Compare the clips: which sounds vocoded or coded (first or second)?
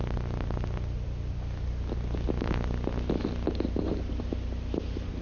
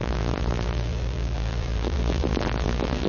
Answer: second